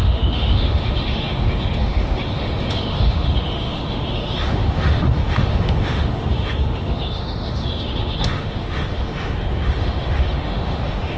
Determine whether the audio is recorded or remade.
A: remade